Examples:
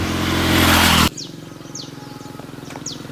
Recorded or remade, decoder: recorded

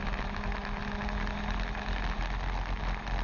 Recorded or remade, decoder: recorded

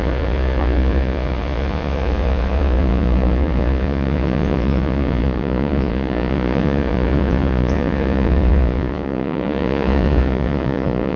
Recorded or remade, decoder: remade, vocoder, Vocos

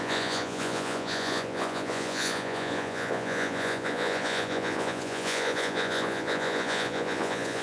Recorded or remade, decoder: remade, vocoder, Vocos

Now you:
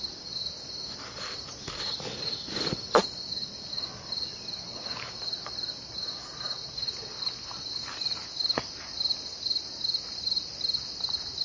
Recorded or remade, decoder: recorded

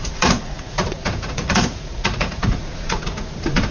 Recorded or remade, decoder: remade, vocoder, Vocos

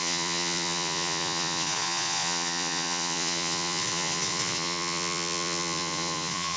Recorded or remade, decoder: remade, vocoder, Vocos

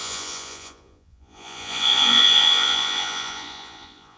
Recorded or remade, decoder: remade, vocoder, Vocos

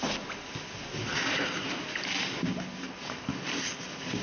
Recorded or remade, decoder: recorded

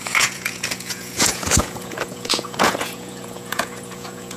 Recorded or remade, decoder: remade, vocoder, Vocos